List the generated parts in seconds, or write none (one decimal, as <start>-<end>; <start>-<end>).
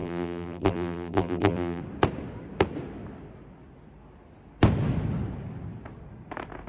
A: 0.0-1.8